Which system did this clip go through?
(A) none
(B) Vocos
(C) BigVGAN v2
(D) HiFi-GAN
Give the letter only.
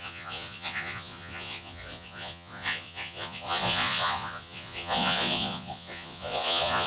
B